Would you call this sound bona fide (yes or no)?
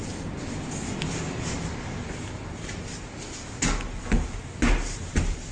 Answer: yes